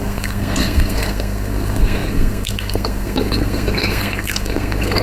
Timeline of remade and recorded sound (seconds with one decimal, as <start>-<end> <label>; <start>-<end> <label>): 0.0-5.0 remade